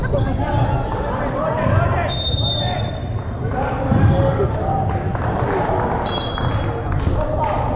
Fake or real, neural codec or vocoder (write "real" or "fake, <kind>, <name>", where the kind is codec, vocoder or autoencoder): real